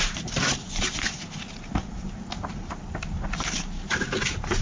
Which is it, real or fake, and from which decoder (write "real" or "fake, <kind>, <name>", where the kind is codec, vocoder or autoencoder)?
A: real